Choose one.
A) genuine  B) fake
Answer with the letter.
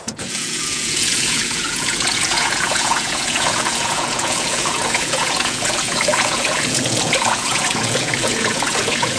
B